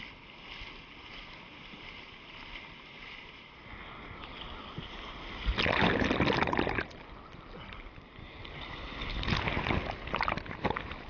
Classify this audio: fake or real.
real